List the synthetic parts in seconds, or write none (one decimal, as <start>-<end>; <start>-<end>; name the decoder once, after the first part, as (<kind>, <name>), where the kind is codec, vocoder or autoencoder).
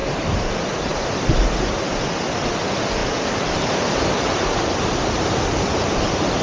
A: 0.0-0.5 (vocoder, BigVGAN v2); 3.0-6.0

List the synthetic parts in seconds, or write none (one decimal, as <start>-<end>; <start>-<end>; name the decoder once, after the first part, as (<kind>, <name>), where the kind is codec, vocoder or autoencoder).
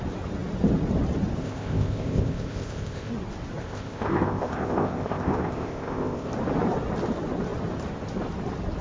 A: 1.4-3.1 (codec, ZipCodec); 3.6-6.3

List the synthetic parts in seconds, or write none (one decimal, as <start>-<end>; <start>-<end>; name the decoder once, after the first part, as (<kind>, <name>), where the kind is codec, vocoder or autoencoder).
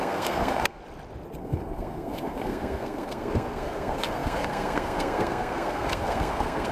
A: 0.0-0.8 (codec, SNAC); 1.4-6.7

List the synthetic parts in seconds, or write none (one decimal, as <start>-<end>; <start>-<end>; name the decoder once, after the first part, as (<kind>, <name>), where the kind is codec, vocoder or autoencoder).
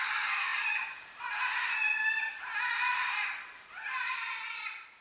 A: none